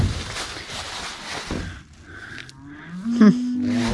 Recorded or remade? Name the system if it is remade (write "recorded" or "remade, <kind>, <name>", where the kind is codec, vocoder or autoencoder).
recorded